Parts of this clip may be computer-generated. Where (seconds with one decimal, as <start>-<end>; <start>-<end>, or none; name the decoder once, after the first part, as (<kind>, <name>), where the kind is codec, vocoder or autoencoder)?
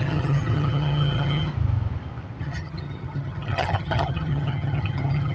0.0-1.5 (vocoder, HiFi-GAN); 2.4-5.3